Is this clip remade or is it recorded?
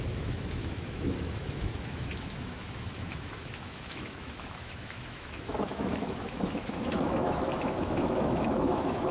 remade